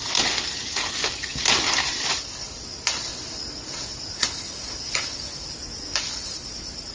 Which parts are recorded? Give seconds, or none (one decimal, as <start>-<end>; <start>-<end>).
1.3-2.1; 3.1-5.5